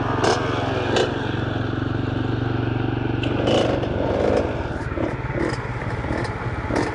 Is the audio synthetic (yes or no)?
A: no